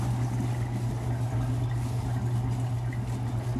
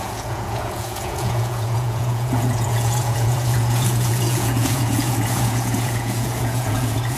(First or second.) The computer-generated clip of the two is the second